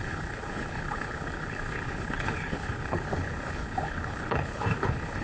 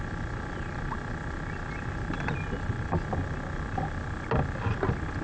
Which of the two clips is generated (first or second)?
first